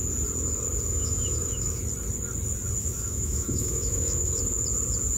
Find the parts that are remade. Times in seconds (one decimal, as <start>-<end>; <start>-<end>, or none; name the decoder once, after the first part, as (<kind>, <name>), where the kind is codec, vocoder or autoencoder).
0.9-1.8 (autoencoder, DAC-VAE); 2.8-4.4